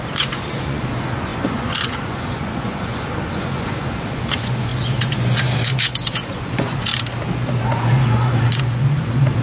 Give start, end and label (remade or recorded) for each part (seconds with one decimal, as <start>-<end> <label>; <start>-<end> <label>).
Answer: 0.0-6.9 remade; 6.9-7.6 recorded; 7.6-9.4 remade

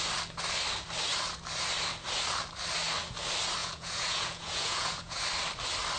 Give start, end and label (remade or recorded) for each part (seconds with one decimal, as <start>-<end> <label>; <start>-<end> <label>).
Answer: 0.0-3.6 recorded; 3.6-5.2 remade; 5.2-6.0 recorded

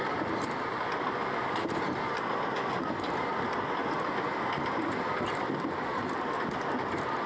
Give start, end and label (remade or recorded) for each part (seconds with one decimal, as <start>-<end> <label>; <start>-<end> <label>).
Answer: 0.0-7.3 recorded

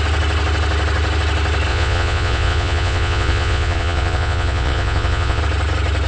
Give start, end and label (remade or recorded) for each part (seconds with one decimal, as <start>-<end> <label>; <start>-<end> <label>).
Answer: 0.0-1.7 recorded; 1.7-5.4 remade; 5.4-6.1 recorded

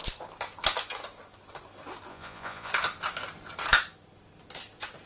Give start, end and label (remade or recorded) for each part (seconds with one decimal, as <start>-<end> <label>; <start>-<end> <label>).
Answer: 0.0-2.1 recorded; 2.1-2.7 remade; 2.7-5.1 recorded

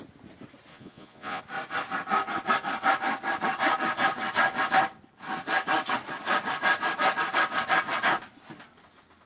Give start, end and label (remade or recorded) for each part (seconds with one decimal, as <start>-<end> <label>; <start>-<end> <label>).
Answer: 0.0-0.7 recorded; 0.7-1.4 remade; 1.4-9.3 recorded

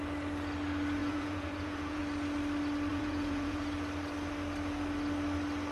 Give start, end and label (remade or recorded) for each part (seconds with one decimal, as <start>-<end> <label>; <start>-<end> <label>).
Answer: 0.0-1.0 recorded; 1.0-2.0 remade; 2.0-2.9 recorded; 2.9-3.6 remade; 3.6-5.7 recorded